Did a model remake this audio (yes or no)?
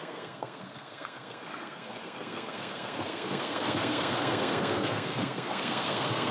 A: yes